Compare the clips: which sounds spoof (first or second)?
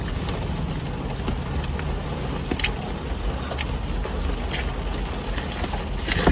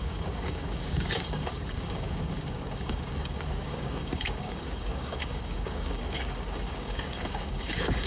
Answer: second